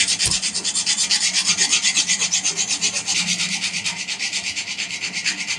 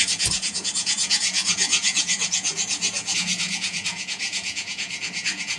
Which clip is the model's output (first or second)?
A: second